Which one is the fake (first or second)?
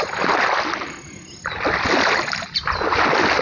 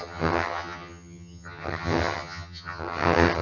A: second